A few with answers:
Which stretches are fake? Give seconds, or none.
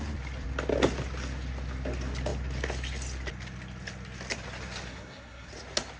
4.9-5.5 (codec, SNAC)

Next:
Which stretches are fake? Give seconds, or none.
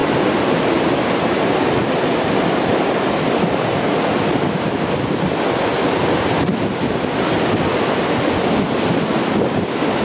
none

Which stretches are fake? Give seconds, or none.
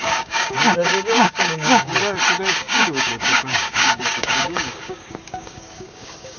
0.0-1.9 (codec, DAC); 2.5-6.4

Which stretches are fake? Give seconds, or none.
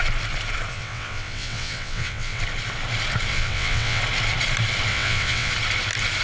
0.7-2.4 (vocoder, WaveNeXt); 3.3-4.0; 4.9-5.5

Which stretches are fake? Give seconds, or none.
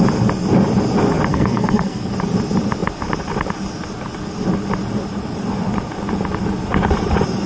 1.3-2.1 (codec, SNAC)